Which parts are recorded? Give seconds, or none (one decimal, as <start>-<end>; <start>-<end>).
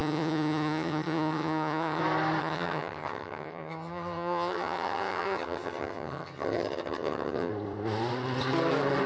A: 2.0-2.4; 7.5-9.1